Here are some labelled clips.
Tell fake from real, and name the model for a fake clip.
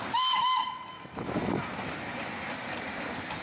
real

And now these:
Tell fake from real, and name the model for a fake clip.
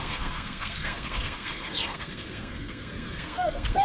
fake, codec, SNAC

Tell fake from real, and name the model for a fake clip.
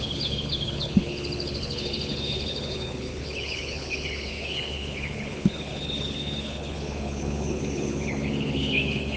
fake, codec, HILCodec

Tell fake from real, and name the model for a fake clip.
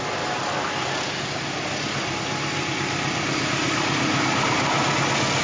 real